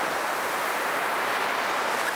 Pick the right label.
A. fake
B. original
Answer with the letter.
B